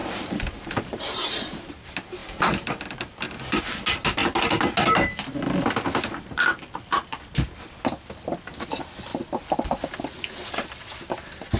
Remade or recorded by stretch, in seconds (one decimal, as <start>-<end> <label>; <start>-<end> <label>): 0.0-1.7 remade; 1.7-11.6 recorded